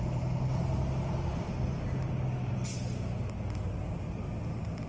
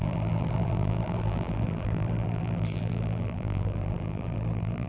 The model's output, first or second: second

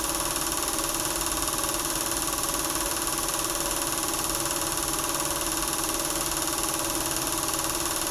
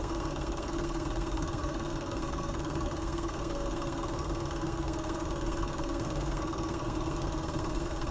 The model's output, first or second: second